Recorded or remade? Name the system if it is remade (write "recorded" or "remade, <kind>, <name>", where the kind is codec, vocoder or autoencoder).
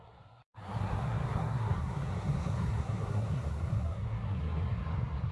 remade, codec, SNAC